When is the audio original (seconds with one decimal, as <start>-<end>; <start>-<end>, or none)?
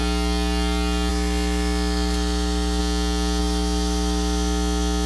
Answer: 0.0-1.1; 2.8-3.4